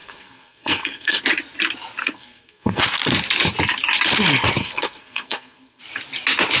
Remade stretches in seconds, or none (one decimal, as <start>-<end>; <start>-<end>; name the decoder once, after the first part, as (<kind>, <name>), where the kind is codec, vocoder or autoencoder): 0.0-1.2 (codec, SNAC); 2.0-2.8; 4.6-5.8